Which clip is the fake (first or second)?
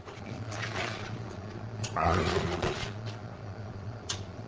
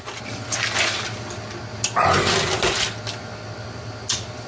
first